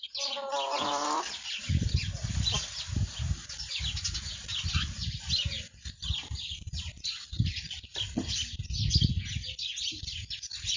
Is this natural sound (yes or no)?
yes